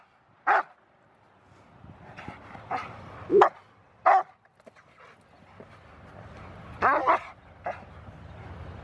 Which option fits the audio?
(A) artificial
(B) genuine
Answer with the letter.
B